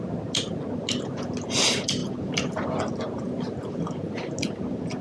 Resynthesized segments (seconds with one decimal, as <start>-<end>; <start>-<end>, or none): none